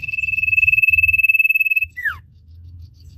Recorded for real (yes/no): no